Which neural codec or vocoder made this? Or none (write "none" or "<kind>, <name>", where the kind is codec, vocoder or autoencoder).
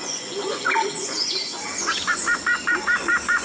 vocoder, Vocos